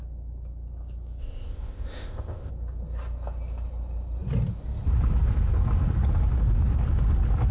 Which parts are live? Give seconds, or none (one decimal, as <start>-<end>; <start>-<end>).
0.0-1.2; 2.5-7.5